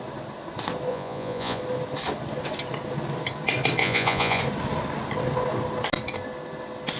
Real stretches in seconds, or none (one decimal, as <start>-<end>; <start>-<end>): 0.0-0.9; 1.6-3.8; 4.4-7.0